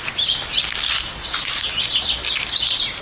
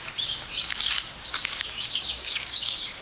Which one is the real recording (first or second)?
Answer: first